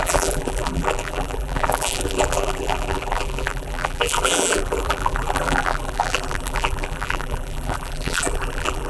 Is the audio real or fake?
fake